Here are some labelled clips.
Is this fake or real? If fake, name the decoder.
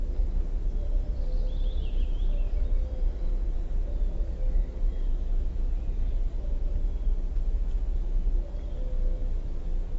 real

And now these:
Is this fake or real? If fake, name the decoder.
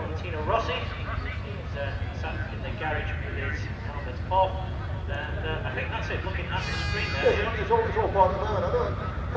real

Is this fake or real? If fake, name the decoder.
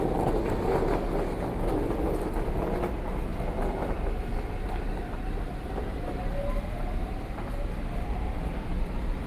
real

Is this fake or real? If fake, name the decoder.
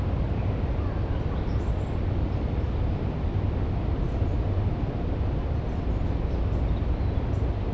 real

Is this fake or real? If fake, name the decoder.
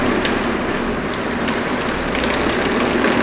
real